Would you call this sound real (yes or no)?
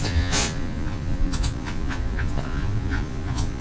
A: no